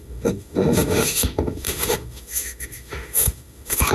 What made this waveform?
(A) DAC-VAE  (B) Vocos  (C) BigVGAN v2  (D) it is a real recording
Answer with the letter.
A